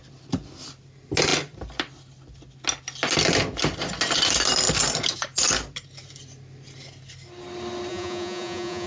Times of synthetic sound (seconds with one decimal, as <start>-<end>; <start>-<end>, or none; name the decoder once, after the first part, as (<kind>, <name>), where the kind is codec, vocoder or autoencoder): 7.9-8.9 (vocoder, Vocos)